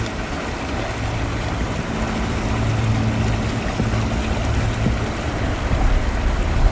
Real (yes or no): yes